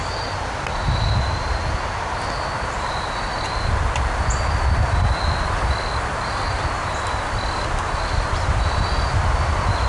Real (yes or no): yes